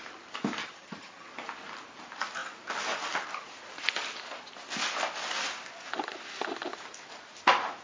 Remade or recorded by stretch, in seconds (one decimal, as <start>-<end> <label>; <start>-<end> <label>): 0.0-0.6 recorded; 0.6-1.3 remade; 1.3-7.8 recorded